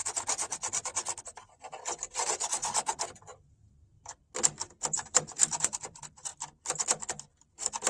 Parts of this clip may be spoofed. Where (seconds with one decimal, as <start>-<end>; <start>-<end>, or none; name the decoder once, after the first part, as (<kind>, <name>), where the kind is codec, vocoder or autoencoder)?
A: none